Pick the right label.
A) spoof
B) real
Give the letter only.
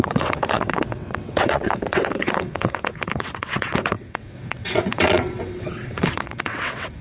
A